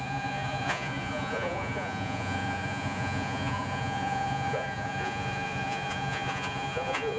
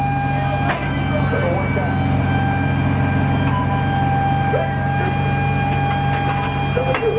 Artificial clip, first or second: first